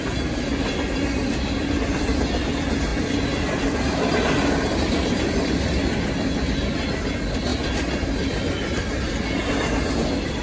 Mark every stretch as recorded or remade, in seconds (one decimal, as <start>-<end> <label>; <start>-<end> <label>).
0.0-10.4 recorded